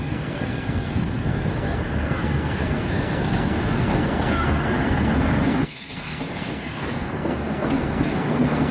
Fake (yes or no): yes